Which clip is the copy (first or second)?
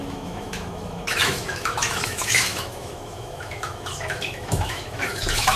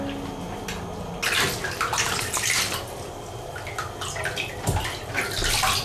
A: first